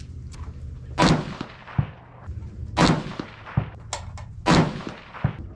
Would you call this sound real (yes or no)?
yes